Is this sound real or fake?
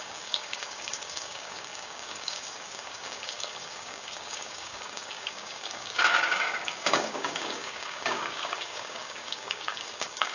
fake